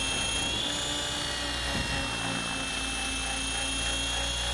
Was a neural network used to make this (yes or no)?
no